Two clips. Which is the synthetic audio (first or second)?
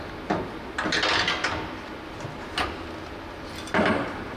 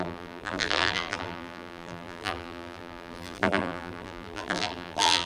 second